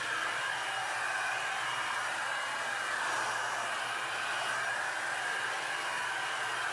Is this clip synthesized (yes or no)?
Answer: no